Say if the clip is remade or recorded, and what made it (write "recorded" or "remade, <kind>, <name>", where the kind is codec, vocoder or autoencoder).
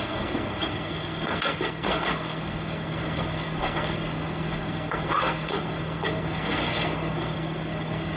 remade, codec, SNAC